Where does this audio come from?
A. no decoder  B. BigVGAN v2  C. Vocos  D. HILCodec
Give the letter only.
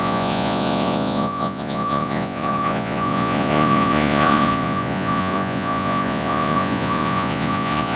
C